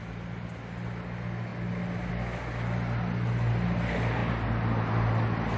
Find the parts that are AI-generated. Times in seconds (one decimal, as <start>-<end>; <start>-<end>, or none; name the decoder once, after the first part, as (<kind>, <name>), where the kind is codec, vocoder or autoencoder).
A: none